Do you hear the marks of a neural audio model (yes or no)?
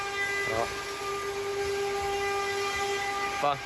no